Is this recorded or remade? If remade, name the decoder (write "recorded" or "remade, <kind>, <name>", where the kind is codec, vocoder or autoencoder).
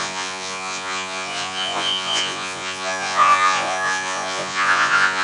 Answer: remade, vocoder, Vocos